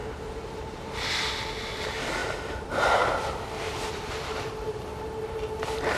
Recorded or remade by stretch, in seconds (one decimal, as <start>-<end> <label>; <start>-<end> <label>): 0.0-1.1 remade; 1.1-2.2 recorded; 2.2-3.2 remade; 3.2-3.7 recorded; 3.7-4.7 remade; 4.7-6.0 recorded